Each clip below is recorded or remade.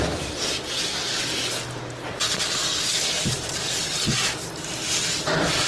recorded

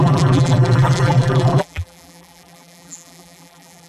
remade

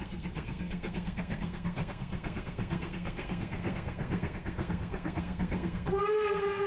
remade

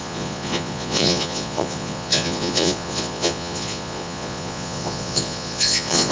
remade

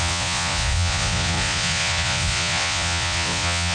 remade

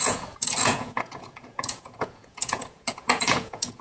remade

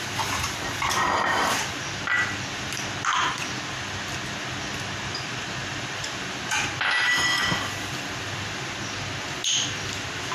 recorded